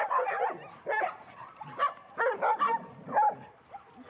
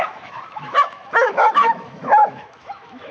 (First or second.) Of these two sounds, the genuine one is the first